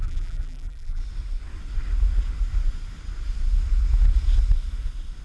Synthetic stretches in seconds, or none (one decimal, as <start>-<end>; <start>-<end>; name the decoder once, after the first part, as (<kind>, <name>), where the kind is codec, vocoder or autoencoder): 0.0-1.0 (vocoder, BigVGAN v2)